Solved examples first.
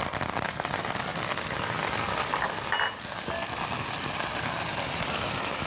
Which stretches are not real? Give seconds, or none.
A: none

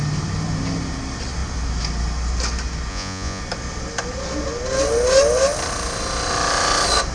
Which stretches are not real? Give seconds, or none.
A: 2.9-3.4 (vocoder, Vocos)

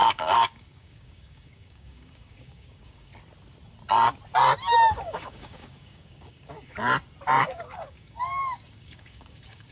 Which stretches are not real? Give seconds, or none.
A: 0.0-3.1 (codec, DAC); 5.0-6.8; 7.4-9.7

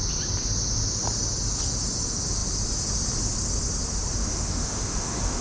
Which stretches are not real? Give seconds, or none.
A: 4.2-5.4 (autoencoder, DAC-VAE)

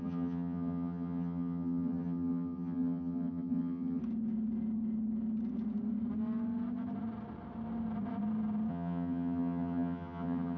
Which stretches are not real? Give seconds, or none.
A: 0.0-4.0 (vocoder, HiFi-GAN); 8.7-10.6